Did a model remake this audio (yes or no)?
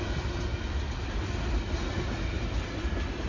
no